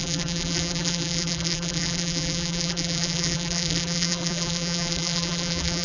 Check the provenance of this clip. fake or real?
fake